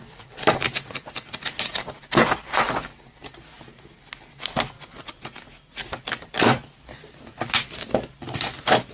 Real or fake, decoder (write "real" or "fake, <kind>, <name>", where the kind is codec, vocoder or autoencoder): real